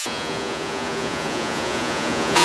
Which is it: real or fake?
fake